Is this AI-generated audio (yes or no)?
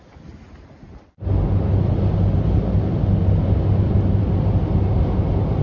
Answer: no